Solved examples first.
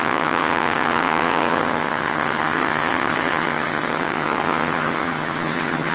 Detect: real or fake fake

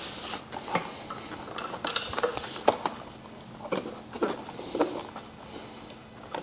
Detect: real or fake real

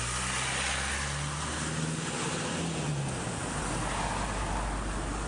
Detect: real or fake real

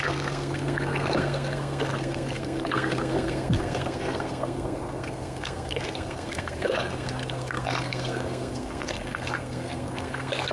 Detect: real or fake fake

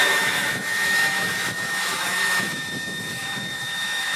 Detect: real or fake fake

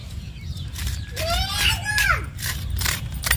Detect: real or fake fake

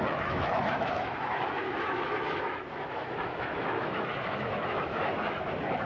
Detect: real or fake fake